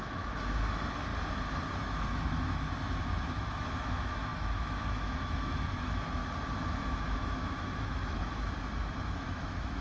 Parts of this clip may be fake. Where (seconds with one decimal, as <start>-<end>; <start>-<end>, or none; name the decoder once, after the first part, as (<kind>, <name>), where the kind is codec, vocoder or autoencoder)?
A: 0.0-1.1 (autoencoder, DAC-VAE); 1.7-6.2; 6.8-9.8